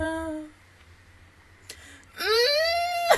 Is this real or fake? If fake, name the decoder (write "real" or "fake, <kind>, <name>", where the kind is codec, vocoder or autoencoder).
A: fake, vocoder, BigVGAN v2